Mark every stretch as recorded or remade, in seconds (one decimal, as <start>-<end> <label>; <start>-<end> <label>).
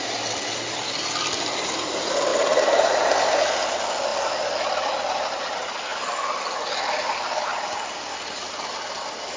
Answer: 0.0-9.4 recorded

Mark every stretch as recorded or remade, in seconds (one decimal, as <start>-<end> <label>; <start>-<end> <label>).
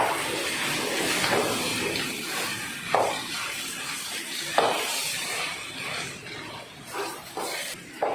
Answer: 0.0-5.0 remade; 5.0-6.7 recorded; 6.7-8.1 remade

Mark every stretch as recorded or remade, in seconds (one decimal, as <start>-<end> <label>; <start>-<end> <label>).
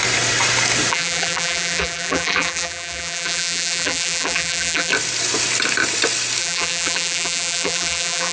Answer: 0.0-0.9 recorded; 0.9-4.9 remade; 4.9-6.4 recorded; 6.4-8.3 remade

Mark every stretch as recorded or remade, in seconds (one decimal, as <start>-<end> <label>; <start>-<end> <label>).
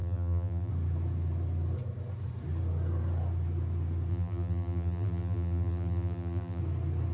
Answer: 0.0-0.7 remade; 0.7-4.1 recorded; 4.1-6.6 remade; 6.6-7.1 recorded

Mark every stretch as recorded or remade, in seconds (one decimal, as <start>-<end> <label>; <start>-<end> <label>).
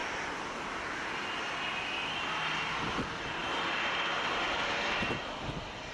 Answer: 0.0-5.9 recorded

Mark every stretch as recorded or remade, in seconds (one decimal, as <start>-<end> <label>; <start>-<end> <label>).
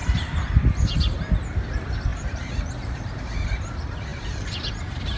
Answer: 0.0-2.1 recorded; 2.1-3.2 remade; 3.2-4.1 recorded; 4.1-4.7 remade; 4.7-5.2 recorded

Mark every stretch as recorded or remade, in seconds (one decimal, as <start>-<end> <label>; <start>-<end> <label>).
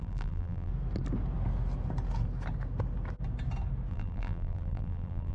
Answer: 0.0-0.7 remade; 0.7-3.9 recorded; 3.9-5.3 remade